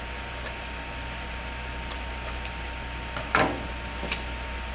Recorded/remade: recorded